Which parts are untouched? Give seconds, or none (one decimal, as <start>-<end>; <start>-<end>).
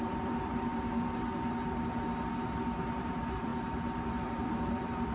0.7-3.0; 3.5-4.1